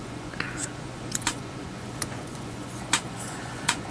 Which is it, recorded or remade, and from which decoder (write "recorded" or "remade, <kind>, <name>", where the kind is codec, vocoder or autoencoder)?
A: remade, vocoder, Vocos